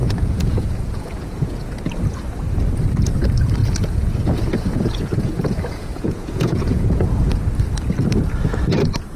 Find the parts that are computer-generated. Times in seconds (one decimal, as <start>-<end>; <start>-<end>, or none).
0.0-1.7; 3.6-7.4